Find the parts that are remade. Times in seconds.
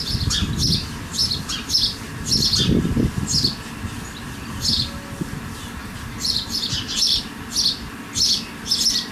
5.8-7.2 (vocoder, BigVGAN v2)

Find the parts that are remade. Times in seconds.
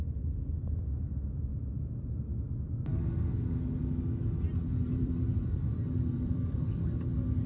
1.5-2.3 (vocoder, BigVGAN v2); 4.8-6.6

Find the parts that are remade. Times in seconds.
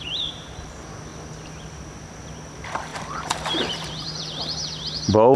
2.9-4.2 (vocoder, BigVGAN v2)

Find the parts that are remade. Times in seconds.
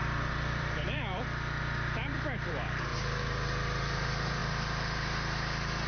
0.0-4.4 (vocoder, BigVGAN v2)